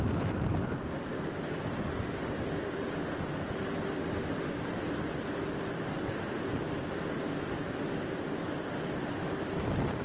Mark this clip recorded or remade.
remade